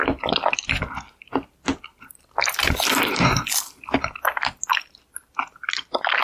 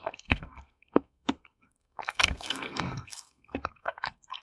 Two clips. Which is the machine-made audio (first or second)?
second